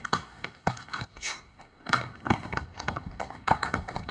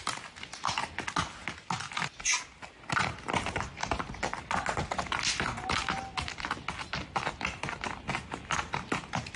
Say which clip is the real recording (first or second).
second